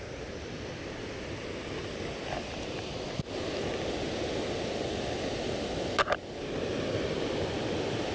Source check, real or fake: real